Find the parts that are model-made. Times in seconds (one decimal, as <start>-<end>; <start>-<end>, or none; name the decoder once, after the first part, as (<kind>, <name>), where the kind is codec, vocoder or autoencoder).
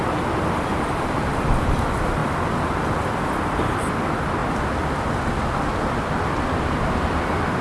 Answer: none